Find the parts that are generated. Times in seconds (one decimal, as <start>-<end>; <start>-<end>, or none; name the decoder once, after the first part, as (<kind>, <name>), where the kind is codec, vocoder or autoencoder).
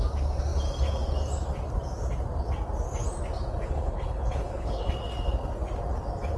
3.7-4.9 (codec, HILCodec)